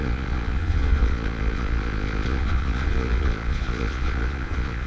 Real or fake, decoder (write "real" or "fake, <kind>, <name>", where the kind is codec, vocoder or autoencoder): fake, vocoder, Vocos